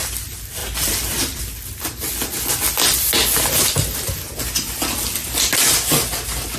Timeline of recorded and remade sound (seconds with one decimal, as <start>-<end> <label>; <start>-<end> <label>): 0.0-6.6 recorded